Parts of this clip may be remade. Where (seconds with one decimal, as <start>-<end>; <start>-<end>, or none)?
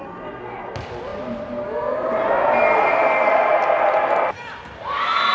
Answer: none